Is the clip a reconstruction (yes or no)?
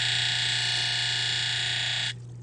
no